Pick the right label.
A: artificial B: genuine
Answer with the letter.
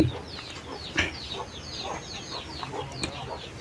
B